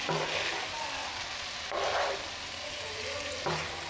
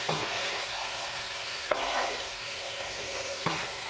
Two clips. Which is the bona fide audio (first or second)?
first